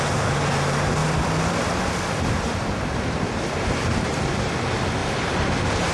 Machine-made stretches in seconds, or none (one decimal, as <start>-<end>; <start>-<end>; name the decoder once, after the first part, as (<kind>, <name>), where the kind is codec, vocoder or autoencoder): 1.0-4.5 (vocoder, BigVGAN v2)